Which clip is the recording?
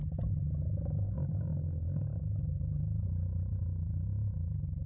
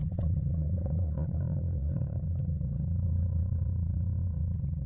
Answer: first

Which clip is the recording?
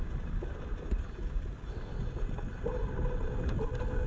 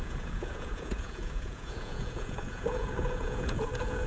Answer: first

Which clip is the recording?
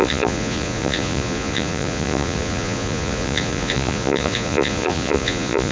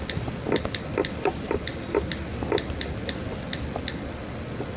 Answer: second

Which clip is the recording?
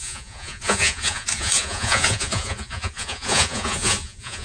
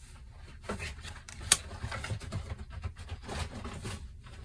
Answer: second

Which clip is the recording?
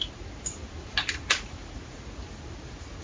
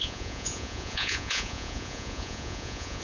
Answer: first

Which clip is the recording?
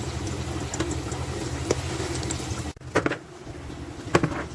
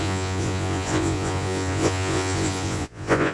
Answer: first